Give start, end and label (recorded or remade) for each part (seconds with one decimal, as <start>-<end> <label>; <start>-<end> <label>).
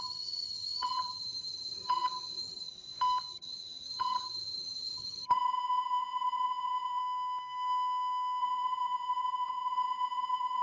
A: 0.0-2.7 remade; 2.7-3.3 recorded; 3.3-7.0 remade; 7.0-8.4 recorded; 8.4-10.6 remade